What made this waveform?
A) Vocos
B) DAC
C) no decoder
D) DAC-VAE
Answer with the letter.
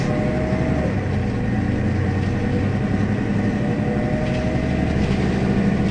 C